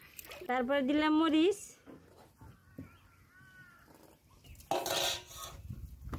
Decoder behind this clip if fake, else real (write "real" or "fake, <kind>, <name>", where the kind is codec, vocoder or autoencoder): real